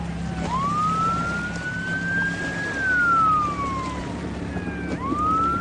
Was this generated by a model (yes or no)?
no